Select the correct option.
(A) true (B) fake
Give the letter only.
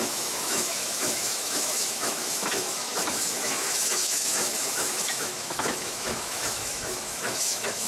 B